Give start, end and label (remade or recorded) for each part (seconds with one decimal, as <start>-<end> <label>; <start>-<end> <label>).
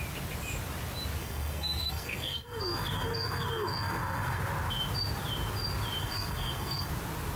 0.0-1.2 recorded; 1.2-4.4 remade; 4.4-6.0 recorded; 6.0-6.9 remade; 6.9-7.4 recorded